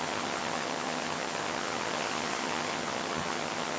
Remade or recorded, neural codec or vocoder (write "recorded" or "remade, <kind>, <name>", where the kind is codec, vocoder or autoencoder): remade, vocoder, HiFi-GAN